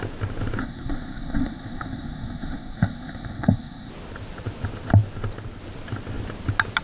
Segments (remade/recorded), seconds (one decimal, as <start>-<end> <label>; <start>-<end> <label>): 0.0-0.6 recorded; 0.6-3.9 remade; 3.9-6.8 recorded